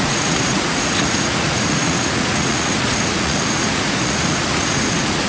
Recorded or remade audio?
remade